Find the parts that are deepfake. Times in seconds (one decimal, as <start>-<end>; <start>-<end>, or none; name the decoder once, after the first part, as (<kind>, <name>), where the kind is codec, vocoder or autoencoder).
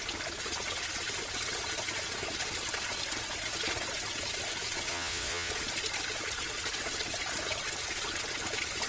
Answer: 4.9-5.5 (vocoder, WaveNeXt)